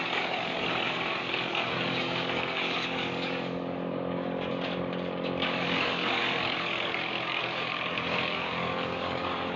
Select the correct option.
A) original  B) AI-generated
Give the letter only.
B